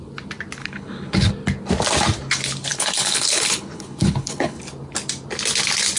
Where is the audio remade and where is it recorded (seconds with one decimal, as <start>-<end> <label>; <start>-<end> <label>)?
0.0-0.6 recorded; 0.6-1.3 remade; 1.3-2.7 recorded; 2.7-4.6 remade; 4.6-6.0 recorded